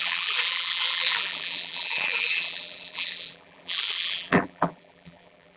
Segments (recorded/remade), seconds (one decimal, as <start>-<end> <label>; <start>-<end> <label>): 0.0-5.6 remade